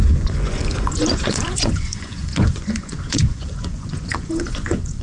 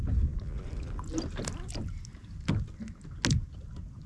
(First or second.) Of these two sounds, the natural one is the second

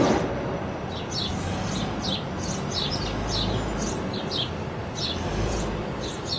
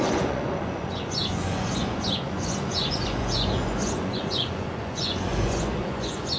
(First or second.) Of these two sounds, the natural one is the first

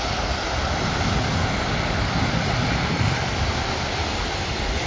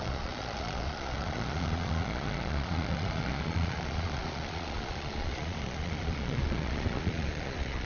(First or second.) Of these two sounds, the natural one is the first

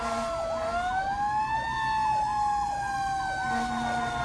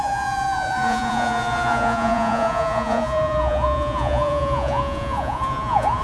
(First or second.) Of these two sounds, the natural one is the first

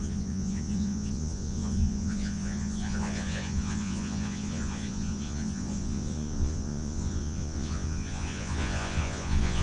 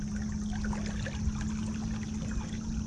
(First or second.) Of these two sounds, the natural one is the second